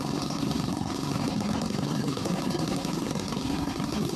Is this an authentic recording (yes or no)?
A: no